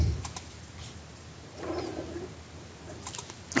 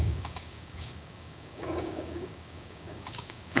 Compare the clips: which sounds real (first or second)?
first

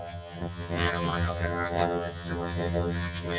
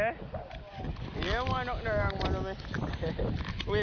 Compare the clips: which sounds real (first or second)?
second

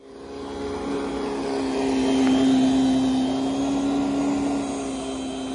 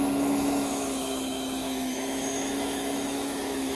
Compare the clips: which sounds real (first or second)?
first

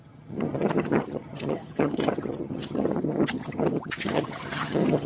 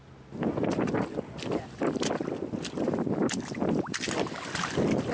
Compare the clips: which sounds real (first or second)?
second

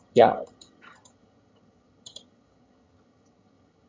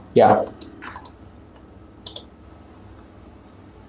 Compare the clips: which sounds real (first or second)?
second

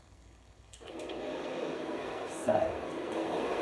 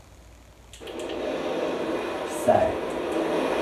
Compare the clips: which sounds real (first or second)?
second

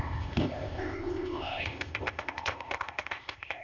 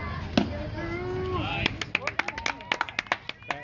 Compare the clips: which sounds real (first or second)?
second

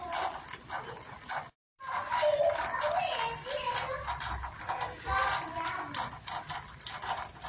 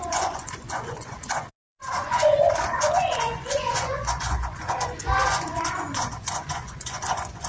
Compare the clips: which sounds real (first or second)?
first